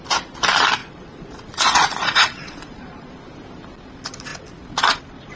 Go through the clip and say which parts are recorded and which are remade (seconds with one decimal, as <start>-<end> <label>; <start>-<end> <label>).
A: 0.0-0.8 recorded; 0.8-3.1 remade; 3.1-5.4 recorded